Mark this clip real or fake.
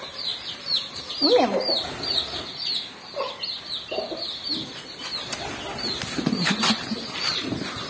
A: real